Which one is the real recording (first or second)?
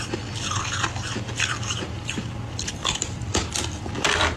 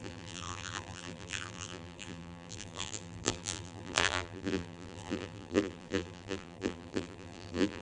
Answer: first